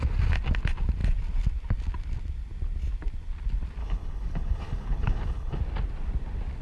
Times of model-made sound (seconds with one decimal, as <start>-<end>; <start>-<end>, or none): 3.8-5.6